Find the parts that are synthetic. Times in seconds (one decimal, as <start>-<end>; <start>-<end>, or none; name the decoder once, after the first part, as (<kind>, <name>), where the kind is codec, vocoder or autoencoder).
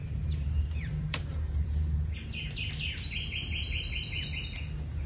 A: 0.0-2.7 (vocoder, BigVGAN v2)